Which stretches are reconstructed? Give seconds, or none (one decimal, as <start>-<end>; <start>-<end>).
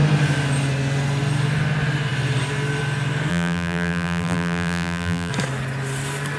3.3-5.3